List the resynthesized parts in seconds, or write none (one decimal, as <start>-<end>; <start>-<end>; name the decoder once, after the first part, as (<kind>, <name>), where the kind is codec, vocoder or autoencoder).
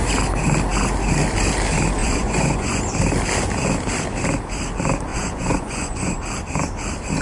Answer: 2.0-2.8 (vocoder, Vocos); 5.1-6.2